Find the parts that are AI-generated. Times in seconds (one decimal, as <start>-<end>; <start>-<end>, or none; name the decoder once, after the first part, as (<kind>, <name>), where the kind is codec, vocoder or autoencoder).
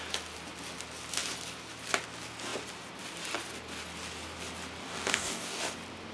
4.8-5.6 (codec, DAC)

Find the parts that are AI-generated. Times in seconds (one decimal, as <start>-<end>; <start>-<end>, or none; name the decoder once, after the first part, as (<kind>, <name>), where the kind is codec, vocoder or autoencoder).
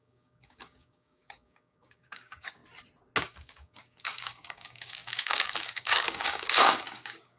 0.0-2.6 (codec, DAC); 3.2-7.4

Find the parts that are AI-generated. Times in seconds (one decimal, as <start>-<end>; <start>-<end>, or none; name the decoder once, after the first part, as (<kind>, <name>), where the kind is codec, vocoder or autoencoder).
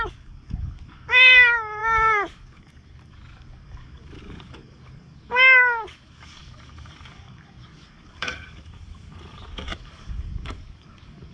0.0-11.3 (codec, DAC)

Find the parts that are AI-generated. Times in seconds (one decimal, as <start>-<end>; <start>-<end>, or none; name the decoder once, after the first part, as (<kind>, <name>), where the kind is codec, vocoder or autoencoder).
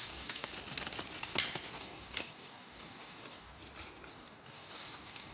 0.0-0.5 (codec, DAC); 1.7-3.6; 4.1-5.3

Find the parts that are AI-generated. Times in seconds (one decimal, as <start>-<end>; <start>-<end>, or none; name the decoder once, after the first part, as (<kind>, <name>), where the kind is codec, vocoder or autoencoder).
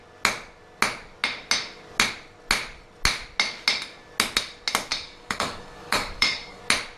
4.9-6.6 (codec, DAC)